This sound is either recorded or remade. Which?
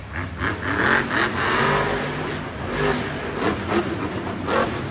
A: recorded